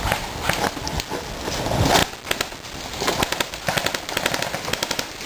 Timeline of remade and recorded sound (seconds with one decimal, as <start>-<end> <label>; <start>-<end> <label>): 0.0-5.3 recorded